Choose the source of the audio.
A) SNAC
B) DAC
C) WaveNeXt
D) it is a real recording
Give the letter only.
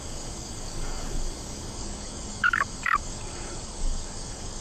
B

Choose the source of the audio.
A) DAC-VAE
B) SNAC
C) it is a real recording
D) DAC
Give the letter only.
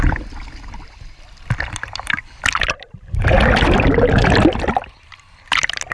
C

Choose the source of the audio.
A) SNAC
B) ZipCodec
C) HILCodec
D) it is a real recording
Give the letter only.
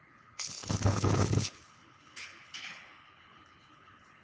C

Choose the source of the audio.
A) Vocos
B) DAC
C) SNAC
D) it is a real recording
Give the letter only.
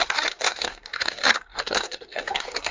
C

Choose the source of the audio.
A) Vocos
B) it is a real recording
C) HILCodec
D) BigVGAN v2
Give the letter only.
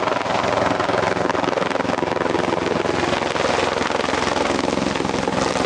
B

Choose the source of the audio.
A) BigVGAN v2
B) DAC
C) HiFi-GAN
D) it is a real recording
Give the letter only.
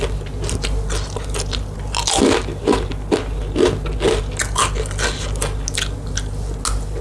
D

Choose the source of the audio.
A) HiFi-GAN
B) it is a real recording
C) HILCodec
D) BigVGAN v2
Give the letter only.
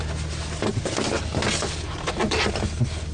B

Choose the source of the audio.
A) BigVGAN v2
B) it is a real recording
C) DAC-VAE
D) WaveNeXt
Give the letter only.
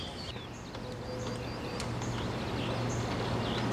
B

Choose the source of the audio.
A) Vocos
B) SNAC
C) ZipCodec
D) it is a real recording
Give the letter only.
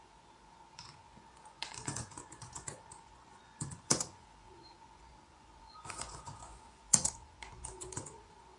A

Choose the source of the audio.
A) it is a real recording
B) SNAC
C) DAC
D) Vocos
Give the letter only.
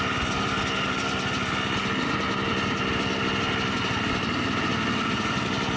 A